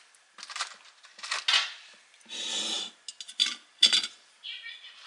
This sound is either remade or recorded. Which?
recorded